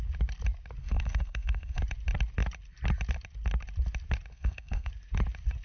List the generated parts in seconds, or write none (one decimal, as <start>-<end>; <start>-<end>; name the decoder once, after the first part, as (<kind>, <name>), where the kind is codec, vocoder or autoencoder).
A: 0.8-1.8 (codec, SNAC); 4.3-4.9